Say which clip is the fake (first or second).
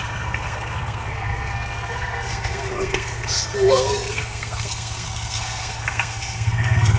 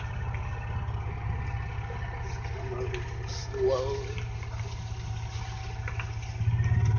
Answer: first